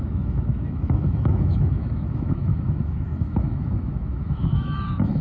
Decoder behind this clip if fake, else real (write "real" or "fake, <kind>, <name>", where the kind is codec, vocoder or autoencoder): fake, autoencoder, DAC-VAE